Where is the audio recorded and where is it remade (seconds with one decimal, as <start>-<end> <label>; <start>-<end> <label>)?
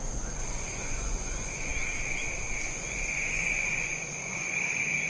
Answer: 0.0-1.7 remade; 1.7-2.7 recorded; 2.7-5.1 remade